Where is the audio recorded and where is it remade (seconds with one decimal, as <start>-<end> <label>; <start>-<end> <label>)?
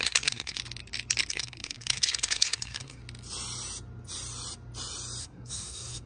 0.0-0.6 remade; 0.6-1.3 recorded; 1.3-3.0 remade; 3.0-5.2 recorded; 5.2-6.1 remade